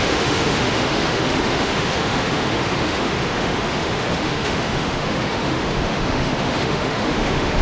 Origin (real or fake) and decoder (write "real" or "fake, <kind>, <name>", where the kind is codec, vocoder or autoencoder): fake, autoencoder, DAC-VAE